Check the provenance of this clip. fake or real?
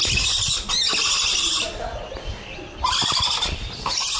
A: real